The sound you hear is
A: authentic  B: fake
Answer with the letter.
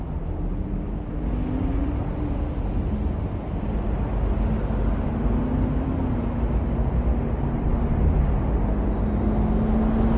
A